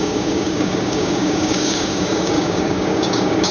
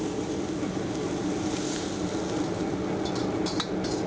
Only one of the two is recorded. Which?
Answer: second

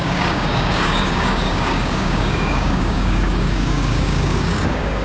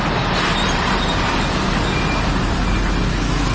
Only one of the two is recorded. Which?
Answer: second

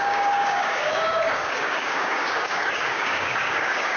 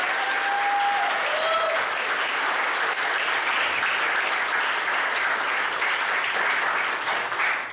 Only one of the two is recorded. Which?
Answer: second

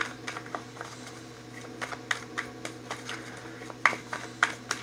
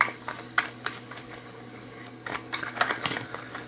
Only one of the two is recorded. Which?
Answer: first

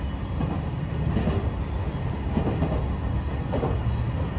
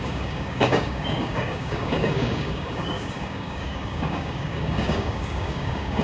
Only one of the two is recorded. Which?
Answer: first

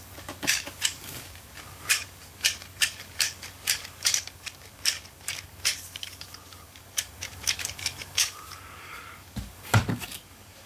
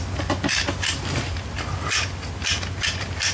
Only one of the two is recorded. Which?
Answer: second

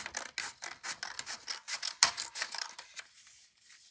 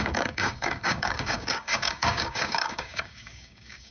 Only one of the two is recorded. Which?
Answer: first